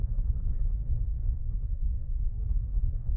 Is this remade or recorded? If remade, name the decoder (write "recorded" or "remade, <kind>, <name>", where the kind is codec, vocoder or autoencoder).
remade, codec, SNAC